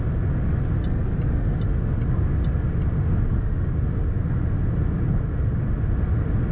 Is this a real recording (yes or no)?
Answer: yes